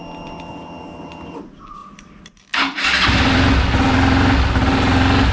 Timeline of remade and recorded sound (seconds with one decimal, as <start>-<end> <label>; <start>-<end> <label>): 0.0-5.3 recorded